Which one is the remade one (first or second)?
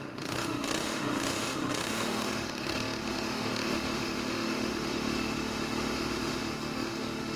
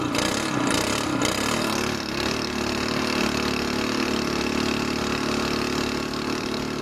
first